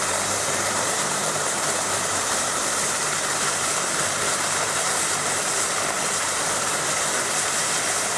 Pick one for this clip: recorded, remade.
remade